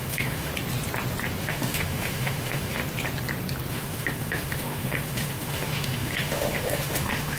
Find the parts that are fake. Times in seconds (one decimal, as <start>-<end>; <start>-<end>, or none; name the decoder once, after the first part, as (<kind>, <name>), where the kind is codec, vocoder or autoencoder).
0.0-0.5 (autoencoder, DAC-VAE); 1.4-2.8; 3.7-7.4